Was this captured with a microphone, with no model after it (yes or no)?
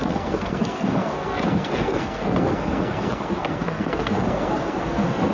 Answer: no